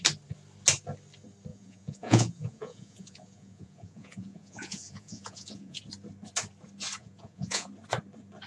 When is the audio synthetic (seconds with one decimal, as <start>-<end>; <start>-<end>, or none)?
1.5-5.8; 7.0-7.7